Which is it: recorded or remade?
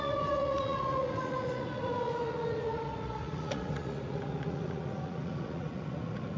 remade